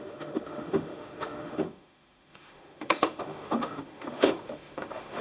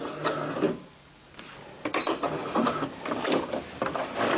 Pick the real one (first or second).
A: second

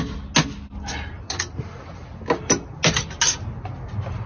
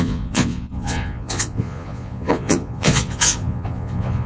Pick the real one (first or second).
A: first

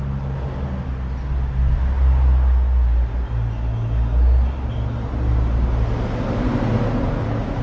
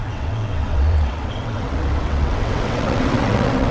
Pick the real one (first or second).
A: first